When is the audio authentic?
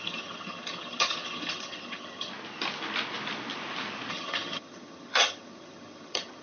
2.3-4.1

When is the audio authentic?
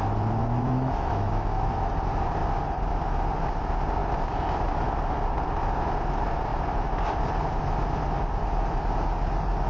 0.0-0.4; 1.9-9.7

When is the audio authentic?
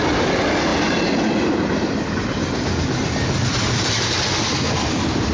0.0-5.3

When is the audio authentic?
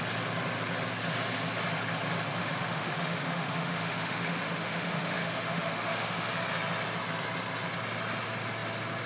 0.0-2.4; 6.3-9.1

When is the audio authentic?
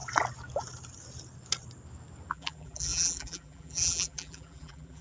0.0-2.3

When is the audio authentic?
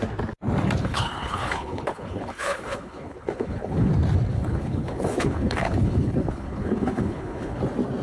0.0-0.8; 3.9-4.3; 7.6-8.0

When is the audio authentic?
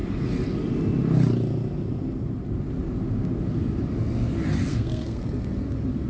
0.0-4.7; 5.2-6.1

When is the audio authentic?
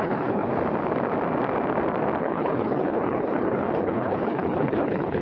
0.5-2.2